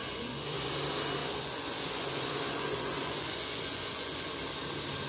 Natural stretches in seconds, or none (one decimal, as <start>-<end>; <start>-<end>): 0.7-1.2; 4.3-5.1

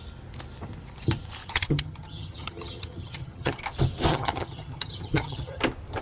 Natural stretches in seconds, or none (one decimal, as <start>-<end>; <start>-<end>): 0.0-1.4; 3.6-4.1; 5.6-6.0

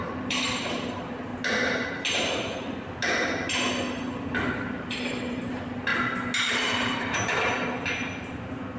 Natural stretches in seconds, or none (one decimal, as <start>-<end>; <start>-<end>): 1.3-4.5; 5.9-6.5; 7.6-8.8

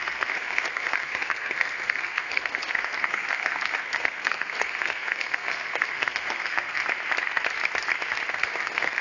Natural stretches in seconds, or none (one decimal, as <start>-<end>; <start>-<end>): 6.8-8.3

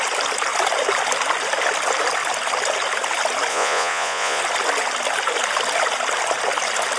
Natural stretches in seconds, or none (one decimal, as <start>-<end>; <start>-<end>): 0.0-3.5; 4.4-7.0

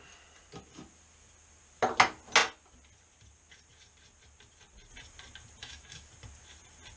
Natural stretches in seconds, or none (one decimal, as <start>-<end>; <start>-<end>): 0.0-5.6; 6.1-7.0

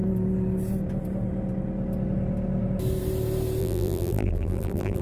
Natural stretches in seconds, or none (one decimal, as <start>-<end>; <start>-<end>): 0.0-3.6